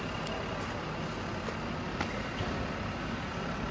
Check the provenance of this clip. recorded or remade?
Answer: recorded